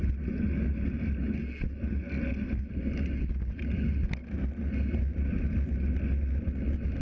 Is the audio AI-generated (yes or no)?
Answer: no